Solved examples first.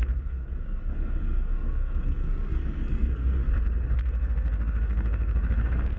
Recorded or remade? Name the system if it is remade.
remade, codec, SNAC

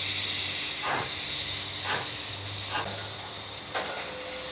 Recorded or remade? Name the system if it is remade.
recorded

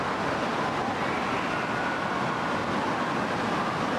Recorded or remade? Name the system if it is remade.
recorded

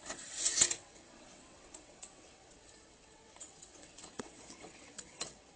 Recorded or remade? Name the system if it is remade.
remade, vocoder, WaveNeXt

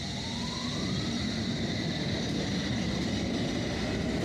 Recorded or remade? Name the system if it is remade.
recorded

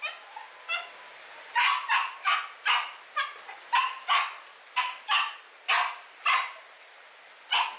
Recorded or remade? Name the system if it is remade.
recorded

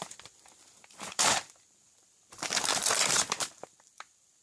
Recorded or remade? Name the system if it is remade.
remade, vocoder, BigVGAN v2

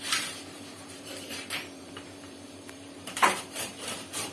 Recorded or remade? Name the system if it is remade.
remade, vocoder, BigVGAN v2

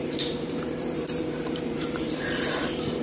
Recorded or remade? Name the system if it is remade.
remade, vocoder, BigVGAN v2